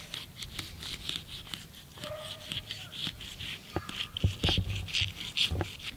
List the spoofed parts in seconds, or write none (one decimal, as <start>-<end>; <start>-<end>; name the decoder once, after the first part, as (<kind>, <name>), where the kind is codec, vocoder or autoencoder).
1.9-2.4 (vocoder, BigVGAN v2)

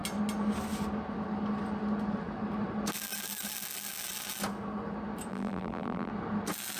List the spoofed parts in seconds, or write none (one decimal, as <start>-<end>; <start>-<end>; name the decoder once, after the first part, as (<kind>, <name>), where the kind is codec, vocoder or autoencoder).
5.3-6.1 (vocoder, BigVGAN v2)

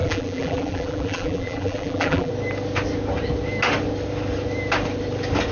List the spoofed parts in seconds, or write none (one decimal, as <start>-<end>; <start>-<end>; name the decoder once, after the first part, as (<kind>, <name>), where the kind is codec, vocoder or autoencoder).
0.0-2.3 (vocoder, BigVGAN v2)

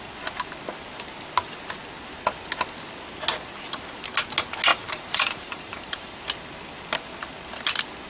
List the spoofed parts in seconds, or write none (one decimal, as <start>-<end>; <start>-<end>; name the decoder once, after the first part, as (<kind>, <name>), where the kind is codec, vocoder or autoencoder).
4.7-6.2 (vocoder, BigVGAN v2)

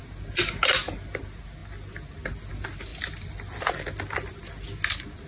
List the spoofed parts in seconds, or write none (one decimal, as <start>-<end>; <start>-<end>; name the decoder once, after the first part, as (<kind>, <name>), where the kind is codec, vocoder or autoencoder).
2.9-3.7 (vocoder, BigVGAN v2)

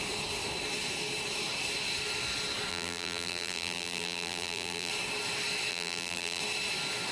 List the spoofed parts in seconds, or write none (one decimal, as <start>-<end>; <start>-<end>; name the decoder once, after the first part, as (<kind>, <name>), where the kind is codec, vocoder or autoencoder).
2.7-4.9 (vocoder, BigVGAN v2); 5.7-6.4